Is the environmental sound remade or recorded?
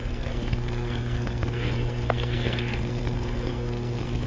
remade